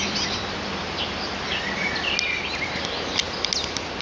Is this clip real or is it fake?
real